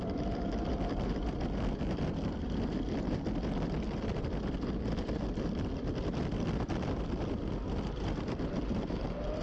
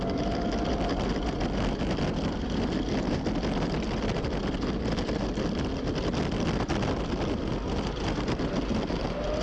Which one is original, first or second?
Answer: second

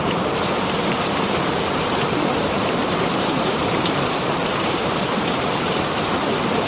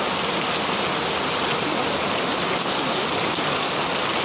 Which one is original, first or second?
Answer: second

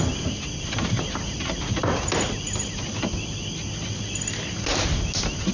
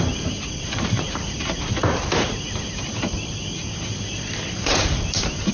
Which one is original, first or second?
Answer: first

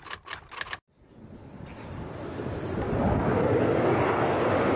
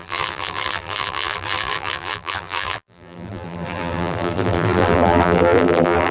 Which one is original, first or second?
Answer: first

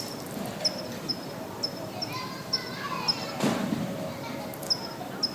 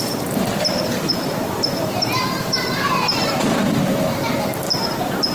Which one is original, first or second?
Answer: first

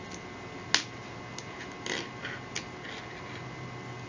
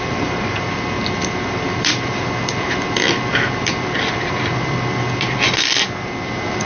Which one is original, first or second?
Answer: first